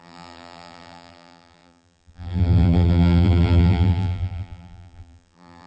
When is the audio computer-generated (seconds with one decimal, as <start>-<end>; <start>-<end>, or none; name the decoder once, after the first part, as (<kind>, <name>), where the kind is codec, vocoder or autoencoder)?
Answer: 0.0-5.7 (vocoder, BigVGAN v2)